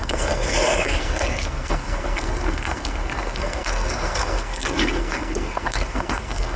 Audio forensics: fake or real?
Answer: fake